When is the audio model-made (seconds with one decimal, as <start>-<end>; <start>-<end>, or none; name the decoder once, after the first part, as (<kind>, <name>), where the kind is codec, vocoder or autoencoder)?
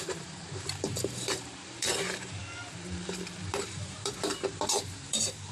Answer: 0.0-2.4 (vocoder, BigVGAN v2); 3.5-5.5